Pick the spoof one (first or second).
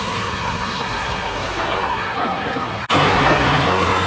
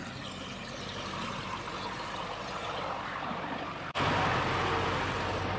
first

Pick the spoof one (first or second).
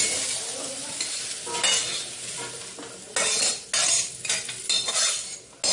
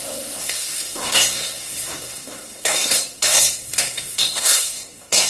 second